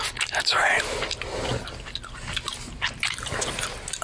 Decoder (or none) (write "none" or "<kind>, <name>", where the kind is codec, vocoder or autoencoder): none